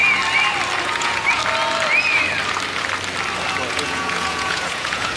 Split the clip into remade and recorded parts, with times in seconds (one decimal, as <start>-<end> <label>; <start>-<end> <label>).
0.0-0.8 recorded; 0.8-1.4 remade; 1.4-3.7 recorded; 3.7-5.2 remade